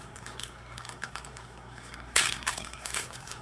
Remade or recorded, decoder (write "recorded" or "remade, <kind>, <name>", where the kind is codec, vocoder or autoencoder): remade, codec, SNAC